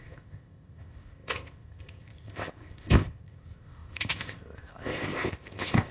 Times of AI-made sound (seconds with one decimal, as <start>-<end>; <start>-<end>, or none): 0.0-5.9